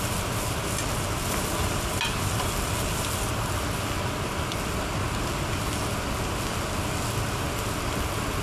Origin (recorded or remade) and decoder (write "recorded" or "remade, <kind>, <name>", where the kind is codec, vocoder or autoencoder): recorded